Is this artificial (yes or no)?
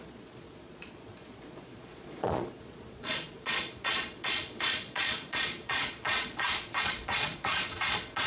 yes